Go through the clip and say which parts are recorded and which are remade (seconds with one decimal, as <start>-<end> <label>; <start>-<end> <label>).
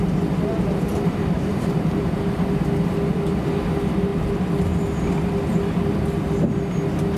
0.0-0.9 recorded; 0.9-2.2 remade; 2.2-7.2 recorded